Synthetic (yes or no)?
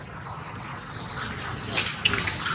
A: no